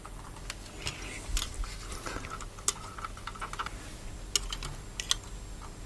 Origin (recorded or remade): recorded